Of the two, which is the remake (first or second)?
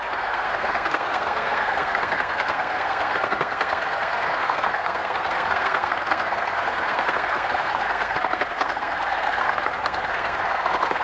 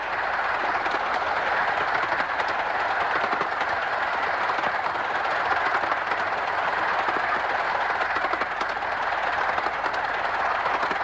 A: first